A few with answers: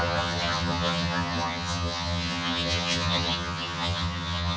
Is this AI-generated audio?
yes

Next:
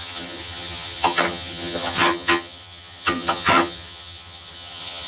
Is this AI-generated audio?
yes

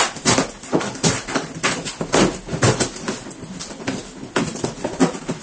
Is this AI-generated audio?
no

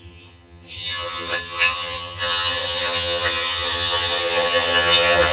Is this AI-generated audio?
yes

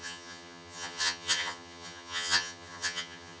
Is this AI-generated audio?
yes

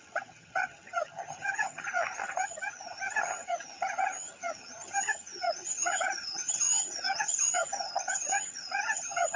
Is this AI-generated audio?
yes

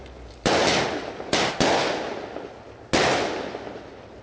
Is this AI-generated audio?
no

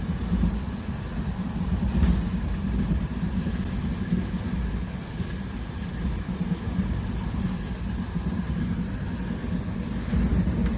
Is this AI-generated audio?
no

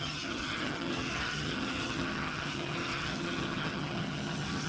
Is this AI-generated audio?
yes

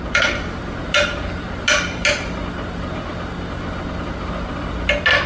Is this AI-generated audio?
no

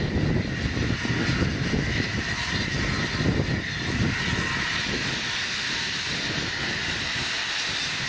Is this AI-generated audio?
no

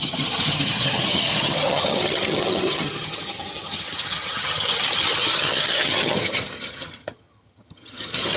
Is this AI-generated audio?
yes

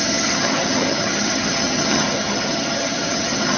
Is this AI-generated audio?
yes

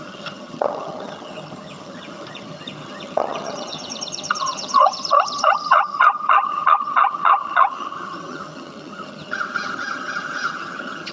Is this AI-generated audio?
yes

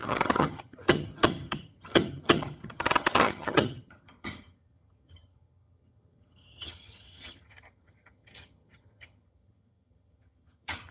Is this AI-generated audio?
yes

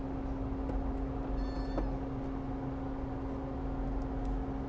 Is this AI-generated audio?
no